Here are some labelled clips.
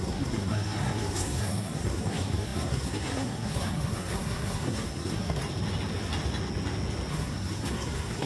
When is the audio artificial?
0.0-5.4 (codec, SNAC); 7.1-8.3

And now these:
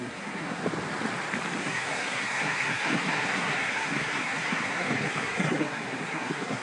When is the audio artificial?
0.0-0.6 (codec, SNAC); 1.6-6.6

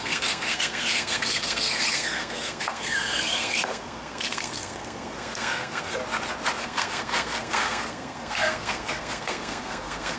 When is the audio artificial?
0.0-6.0 (codec, SNAC); 6.6-10.2